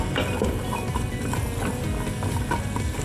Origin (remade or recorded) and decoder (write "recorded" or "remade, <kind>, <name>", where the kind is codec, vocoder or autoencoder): recorded